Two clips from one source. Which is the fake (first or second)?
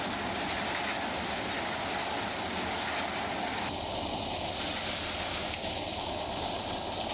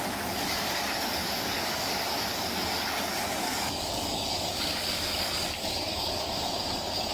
second